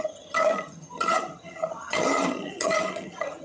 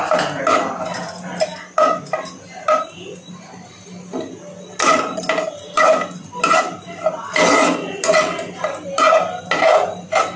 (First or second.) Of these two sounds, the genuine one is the second